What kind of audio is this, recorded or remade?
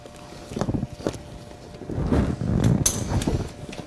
recorded